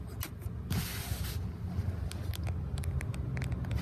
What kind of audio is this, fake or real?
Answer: real